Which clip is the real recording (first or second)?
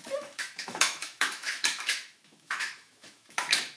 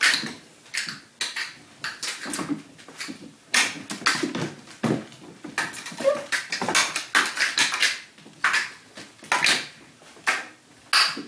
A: second